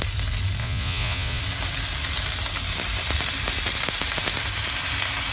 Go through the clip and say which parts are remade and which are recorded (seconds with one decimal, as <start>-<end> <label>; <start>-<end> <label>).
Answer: 0.0-0.6 recorded; 0.6-1.4 remade; 1.4-5.3 recorded